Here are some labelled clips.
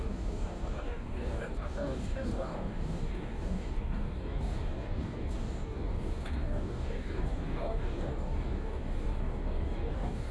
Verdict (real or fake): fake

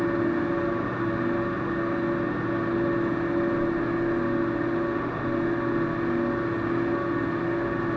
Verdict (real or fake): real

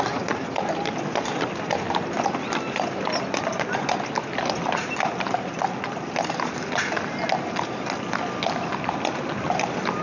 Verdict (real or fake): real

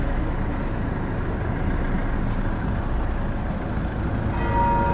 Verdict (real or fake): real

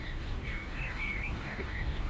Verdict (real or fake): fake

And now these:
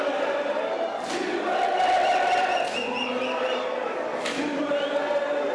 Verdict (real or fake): real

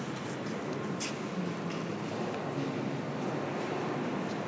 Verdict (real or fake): real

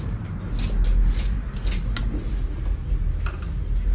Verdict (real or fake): real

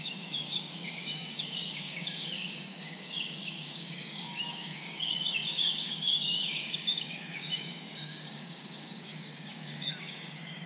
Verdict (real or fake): fake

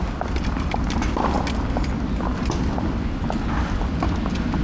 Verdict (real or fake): real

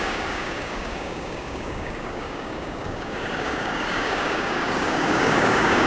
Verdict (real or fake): fake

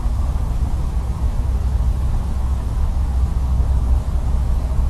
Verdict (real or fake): fake